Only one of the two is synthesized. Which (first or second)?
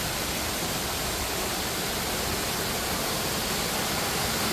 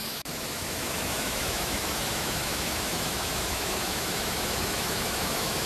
second